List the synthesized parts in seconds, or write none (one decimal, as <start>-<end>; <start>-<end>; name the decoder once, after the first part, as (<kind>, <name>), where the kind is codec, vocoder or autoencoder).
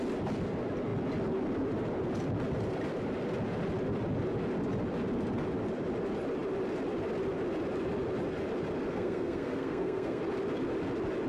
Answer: 8.9-10.2 (codec, SNAC)